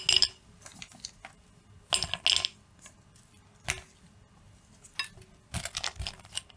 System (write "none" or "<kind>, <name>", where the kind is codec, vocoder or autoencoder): none